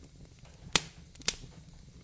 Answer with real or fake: real